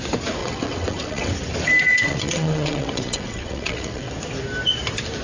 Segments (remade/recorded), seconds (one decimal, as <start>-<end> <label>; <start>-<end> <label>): 0.0-0.4 recorded; 0.4-1.3 remade; 1.3-1.9 recorded; 1.9-4.1 remade; 4.1-5.2 recorded